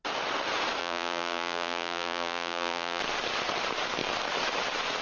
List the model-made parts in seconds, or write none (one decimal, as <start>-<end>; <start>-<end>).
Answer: 0.8-3.0